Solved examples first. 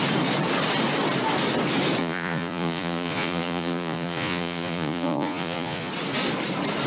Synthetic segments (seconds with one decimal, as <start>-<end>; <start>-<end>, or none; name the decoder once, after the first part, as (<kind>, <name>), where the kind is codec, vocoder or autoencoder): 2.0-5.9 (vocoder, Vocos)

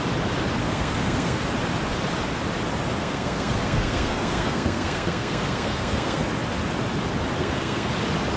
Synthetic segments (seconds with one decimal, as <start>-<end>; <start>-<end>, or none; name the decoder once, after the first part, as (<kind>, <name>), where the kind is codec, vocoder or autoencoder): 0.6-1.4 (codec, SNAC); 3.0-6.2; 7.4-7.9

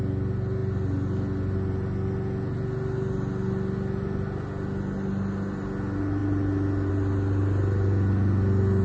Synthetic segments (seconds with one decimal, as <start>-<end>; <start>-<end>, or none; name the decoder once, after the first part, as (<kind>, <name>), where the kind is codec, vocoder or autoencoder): none

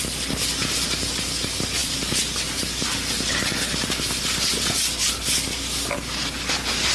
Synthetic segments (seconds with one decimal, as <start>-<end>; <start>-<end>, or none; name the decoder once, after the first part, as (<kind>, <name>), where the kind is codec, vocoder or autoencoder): none

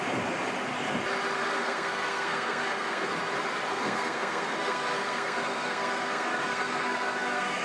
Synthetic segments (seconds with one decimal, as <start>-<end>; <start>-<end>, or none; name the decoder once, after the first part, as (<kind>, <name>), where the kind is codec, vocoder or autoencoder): 1.4-3.1 (codec, SNAC); 3.7-7.6